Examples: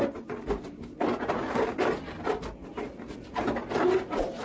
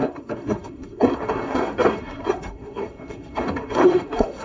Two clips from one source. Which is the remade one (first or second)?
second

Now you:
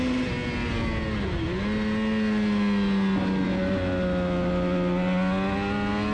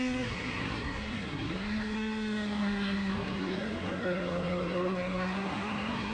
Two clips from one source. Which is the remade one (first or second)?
second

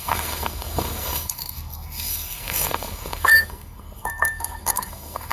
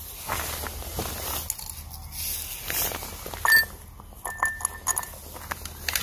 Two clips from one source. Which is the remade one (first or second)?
first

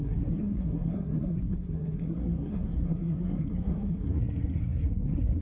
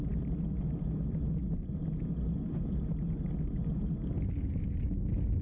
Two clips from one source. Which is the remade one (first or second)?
first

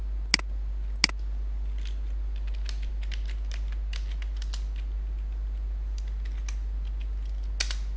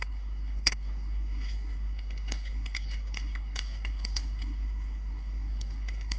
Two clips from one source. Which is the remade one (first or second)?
second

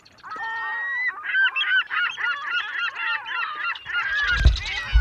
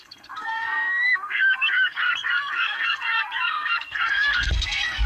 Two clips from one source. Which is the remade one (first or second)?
second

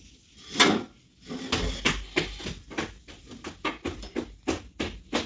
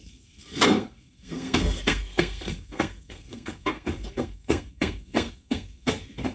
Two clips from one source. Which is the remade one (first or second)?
second